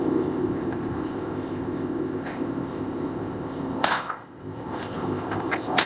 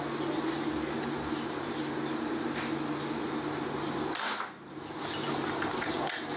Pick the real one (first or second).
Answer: second